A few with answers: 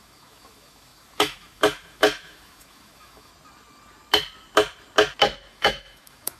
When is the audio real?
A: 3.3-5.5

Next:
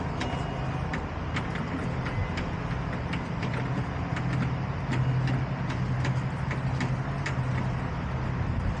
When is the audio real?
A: 0.0-8.8

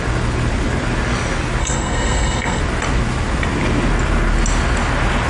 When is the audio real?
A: 0.0-1.6; 2.6-5.3